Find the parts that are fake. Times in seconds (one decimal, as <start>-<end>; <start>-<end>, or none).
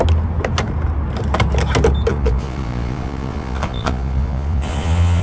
2.1-5.2